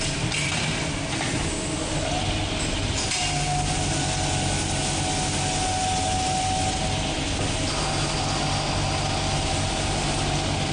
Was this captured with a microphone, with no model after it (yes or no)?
yes